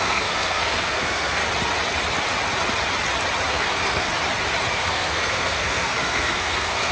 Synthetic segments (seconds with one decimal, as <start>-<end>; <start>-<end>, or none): 0.0-1.4; 3.5-4.1; 4.7-6.9